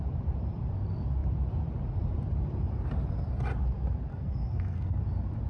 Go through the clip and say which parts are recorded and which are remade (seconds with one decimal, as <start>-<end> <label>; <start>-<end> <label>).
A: 0.0-4.1 recorded; 4.1-5.0 remade; 5.0-5.5 recorded